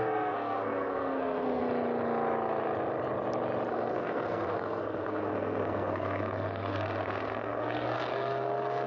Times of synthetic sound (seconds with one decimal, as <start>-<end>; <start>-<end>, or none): 0.0-1.6; 3.7-8.9